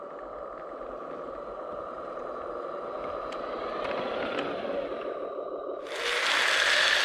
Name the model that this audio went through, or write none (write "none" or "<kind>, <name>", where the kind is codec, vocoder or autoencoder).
none